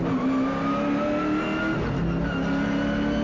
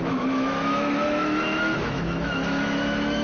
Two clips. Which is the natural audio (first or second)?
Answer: first